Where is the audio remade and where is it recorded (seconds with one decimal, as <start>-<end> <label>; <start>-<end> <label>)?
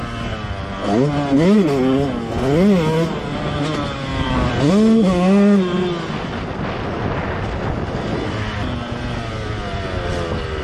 0.0-4.1 recorded; 4.1-4.7 remade; 4.7-10.6 recorded